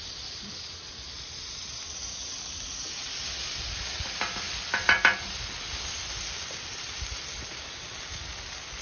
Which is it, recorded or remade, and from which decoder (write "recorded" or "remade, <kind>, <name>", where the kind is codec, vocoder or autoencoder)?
recorded